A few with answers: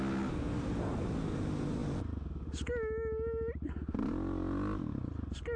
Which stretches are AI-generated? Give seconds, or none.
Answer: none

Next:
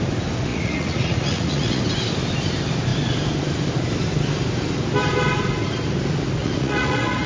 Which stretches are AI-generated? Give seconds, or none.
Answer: 0.5-1.8 (vocoder, Vocos); 6.4-7.3

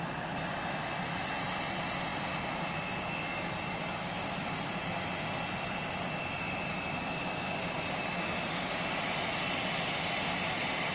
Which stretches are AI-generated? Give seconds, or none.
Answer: none

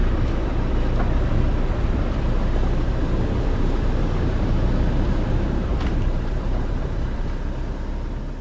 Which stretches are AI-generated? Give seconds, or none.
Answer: 5.7-7.3 (vocoder, BigVGAN v2)